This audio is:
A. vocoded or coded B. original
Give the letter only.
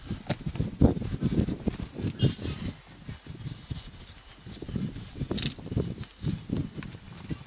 B